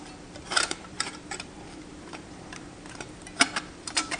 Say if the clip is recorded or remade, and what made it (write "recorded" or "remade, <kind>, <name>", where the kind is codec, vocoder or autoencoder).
remade, vocoder, BigVGAN v2